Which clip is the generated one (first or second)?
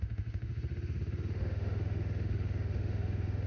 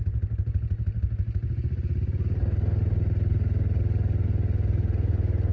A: first